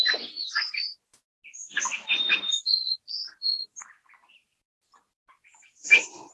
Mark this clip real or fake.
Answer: real